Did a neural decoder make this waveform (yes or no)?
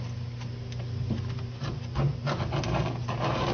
no